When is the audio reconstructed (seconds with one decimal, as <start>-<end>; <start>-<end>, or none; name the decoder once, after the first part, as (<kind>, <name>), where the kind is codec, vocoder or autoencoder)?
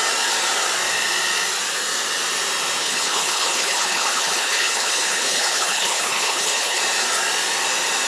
2.8-6.8 (codec, HILCodec)